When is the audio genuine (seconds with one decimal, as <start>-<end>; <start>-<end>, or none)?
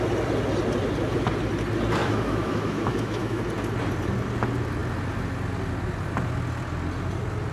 0.0-2.0; 3.4-7.5